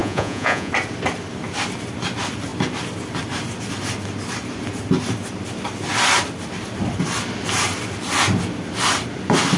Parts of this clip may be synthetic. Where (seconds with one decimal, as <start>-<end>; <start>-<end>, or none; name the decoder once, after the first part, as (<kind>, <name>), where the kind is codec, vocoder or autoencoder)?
0.0-0.7 (vocoder, Vocos)